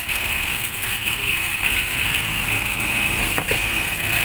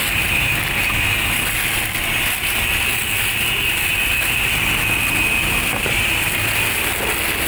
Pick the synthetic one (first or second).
first